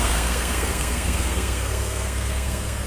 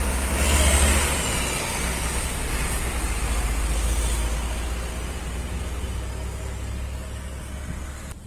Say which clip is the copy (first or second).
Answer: first